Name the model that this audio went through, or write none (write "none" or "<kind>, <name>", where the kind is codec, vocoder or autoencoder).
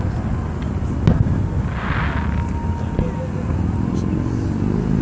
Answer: none